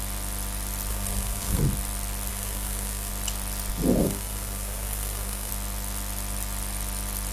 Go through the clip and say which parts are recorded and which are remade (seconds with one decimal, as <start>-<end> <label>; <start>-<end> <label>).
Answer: 0.0-0.9 recorded; 0.9-1.6 remade; 1.6-2.3 recorded; 2.3-3.1 remade; 3.1-4.0 recorded; 4.0-5.5 remade; 5.5-7.3 recorded